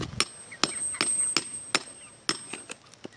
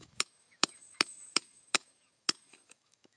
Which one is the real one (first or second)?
first